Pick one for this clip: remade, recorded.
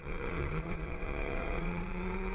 remade